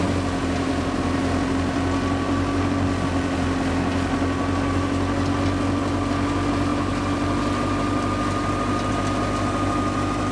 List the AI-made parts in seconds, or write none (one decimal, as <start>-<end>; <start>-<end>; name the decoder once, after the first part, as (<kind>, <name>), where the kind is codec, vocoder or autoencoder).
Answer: none